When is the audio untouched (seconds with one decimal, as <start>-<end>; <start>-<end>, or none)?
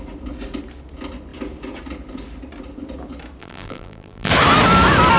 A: 0.0-3.4; 4.3-5.2